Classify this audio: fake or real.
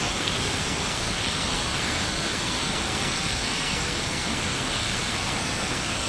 fake